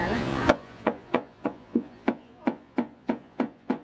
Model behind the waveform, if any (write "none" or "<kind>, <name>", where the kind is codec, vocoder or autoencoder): vocoder, Vocos